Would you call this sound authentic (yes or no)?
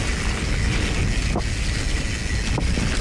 yes